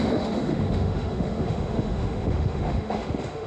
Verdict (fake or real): fake